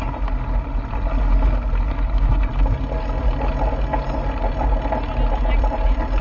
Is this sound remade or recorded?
recorded